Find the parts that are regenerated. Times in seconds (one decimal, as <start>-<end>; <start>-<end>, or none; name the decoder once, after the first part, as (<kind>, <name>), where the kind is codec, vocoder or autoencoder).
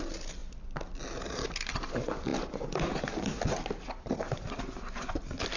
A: none